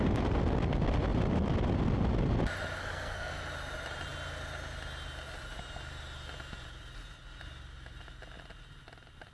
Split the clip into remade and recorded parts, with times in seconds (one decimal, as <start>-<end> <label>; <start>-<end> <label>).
0.0-2.8 recorded; 2.8-3.3 remade; 3.3-9.3 recorded